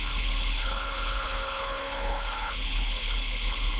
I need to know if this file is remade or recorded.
remade